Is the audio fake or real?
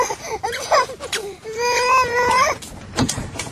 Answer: real